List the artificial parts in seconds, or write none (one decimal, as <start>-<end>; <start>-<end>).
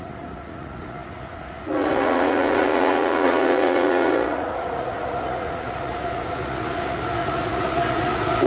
0.0-8.5